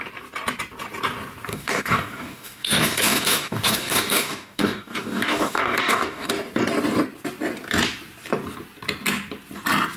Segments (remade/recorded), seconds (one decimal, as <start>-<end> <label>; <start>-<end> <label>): 0.0-1.5 recorded; 1.5-6.3 remade; 6.3-10.0 recorded